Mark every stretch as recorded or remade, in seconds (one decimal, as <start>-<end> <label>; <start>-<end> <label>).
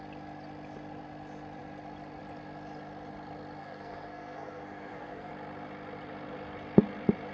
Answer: 0.0-3.6 recorded; 3.6-5.3 remade; 5.3-7.3 recorded